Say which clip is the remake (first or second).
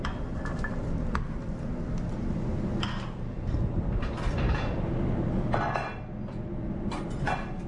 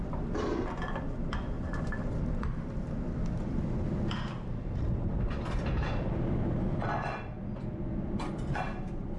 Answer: second